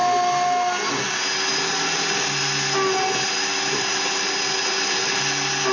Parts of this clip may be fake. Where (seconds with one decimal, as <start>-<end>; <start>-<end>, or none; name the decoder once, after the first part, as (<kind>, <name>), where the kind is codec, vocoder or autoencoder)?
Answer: none